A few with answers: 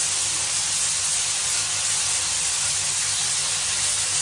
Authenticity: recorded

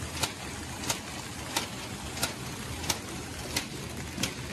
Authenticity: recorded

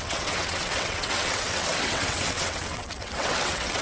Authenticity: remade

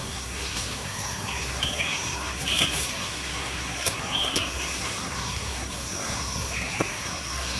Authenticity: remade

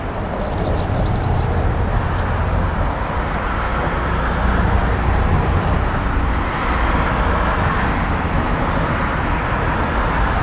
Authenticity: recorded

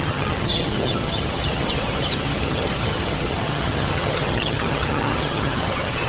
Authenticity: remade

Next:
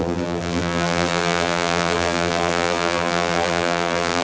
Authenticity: remade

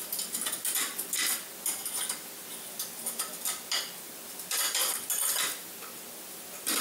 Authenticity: recorded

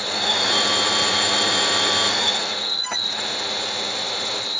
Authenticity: remade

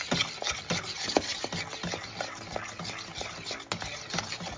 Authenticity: recorded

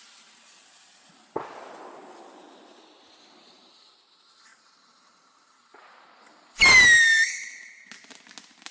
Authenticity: recorded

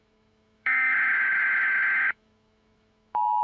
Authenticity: remade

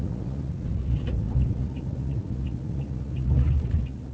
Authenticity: remade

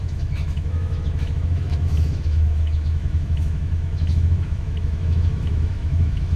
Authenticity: remade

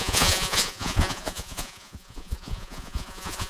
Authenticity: remade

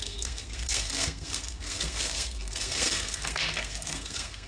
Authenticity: remade